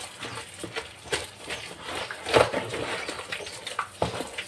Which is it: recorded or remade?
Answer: remade